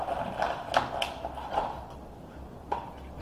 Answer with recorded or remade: recorded